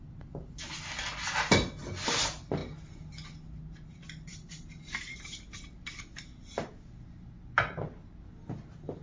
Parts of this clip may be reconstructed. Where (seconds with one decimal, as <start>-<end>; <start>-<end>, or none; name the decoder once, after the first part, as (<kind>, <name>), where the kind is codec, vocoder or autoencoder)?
none